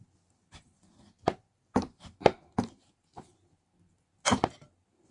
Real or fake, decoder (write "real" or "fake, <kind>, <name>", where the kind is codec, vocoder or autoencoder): real